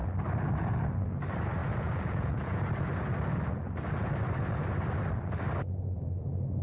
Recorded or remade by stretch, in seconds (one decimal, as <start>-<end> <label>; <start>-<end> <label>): 0.0-1.6 recorded; 1.6-2.6 remade; 2.6-6.6 recorded